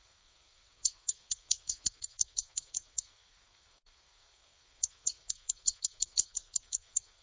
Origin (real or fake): fake